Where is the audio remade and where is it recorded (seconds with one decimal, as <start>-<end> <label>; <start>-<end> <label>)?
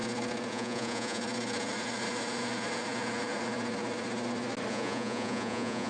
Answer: 0.0-0.5 recorded; 0.5-1.2 remade; 1.2-4.7 recorded; 4.7-5.9 remade